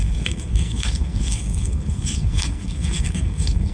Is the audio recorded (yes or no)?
no